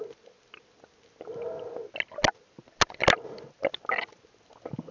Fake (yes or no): no